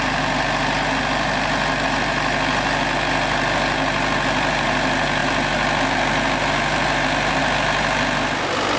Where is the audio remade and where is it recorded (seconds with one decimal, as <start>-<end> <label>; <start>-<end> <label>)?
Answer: 0.0-8.8 recorded